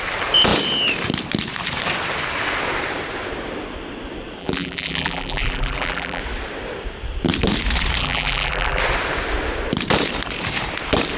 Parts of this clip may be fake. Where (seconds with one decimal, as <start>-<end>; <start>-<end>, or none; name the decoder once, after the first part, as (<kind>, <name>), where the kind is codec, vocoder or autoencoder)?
4.4-6.2 (vocoder, BigVGAN v2); 8.0-8.8